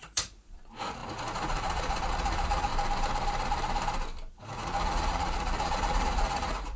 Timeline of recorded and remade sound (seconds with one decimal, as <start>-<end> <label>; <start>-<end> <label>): 0.0-2.7 remade; 2.7-4.3 recorded; 4.3-6.8 remade